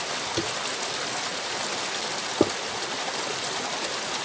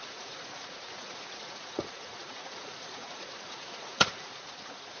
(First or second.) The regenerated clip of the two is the second